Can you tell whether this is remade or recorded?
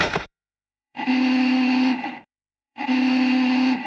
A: remade